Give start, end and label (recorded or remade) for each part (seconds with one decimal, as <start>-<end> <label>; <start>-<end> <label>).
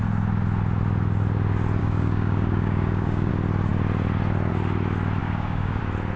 0.0-1.8 recorded; 1.8-3.3 remade; 3.3-5.2 recorded; 5.2-5.8 remade; 5.8-6.2 recorded